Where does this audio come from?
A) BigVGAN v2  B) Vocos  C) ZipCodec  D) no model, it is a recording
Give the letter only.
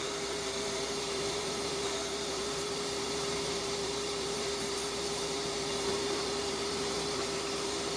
A